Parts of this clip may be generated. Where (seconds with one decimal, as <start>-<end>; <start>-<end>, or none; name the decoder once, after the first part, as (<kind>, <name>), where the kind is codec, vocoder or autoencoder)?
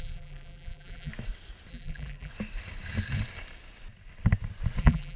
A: 0.0-1.1 (vocoder, BigVGAN v2); 1.7-2.3; 4.8-5.2